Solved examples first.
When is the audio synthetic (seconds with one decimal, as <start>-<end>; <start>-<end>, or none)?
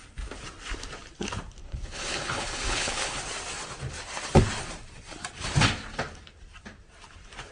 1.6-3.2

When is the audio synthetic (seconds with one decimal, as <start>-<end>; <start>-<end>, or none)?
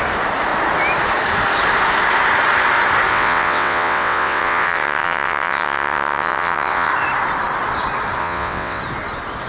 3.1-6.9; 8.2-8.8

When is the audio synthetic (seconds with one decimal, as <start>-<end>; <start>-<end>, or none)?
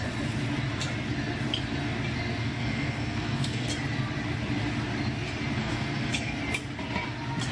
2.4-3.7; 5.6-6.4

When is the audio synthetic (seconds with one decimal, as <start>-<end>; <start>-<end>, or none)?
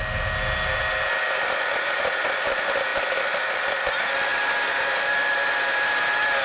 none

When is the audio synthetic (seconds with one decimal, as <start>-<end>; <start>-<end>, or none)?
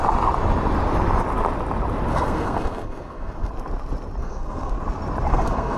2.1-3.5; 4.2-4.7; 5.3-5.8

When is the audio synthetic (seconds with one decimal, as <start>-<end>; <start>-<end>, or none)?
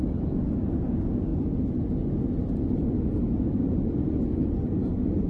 none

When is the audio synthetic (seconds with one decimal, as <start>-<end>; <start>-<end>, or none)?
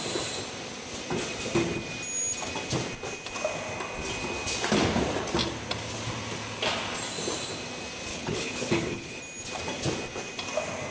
8.1-9.2